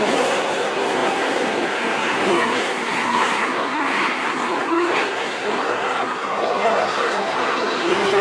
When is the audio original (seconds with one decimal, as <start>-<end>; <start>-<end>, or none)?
none